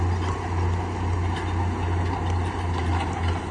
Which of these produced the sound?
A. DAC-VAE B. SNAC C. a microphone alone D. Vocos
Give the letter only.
C